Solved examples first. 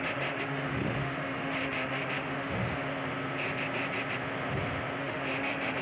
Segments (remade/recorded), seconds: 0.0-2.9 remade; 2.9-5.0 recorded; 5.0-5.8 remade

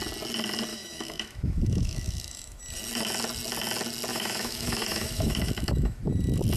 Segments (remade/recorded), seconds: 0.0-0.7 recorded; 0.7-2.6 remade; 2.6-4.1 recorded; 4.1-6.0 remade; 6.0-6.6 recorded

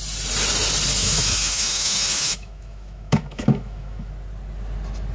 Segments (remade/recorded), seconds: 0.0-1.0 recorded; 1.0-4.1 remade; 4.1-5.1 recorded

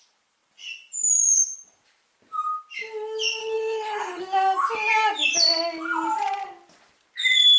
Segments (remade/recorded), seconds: 0.0-3.4 recorded; 3.4-4.2 remade; 4.2-7.6 recorded

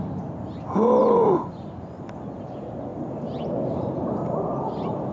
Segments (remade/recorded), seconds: 0.0-1.0 recorded; 1.0-2.0 remade; 2.0-5.1 recorded

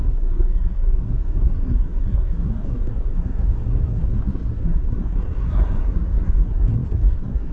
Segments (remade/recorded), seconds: 0.0-7.5 remade